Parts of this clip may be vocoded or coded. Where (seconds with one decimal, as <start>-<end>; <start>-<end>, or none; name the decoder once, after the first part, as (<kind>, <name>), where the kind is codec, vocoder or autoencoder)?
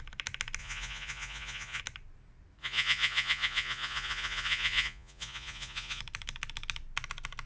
0.6-1.8 (vocoder, Vocos); 2.6-6.0